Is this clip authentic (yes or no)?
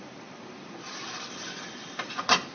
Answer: no